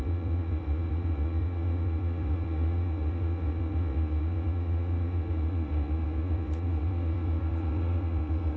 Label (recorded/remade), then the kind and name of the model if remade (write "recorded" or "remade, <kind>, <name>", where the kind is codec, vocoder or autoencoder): remade, vocoder, Vocos